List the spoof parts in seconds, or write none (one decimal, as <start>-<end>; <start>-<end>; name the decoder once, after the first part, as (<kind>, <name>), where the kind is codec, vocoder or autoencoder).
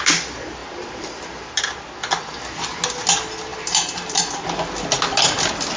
0.6-1.6 (vocoder, BigVGAN v2); 3.5-4.2